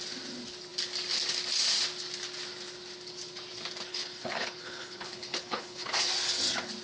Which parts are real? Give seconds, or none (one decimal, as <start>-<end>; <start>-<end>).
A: 0.0-3.9; 6.1-6.8